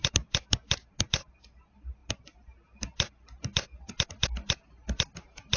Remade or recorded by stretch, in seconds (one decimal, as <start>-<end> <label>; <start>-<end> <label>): 0.0-5.6 recorded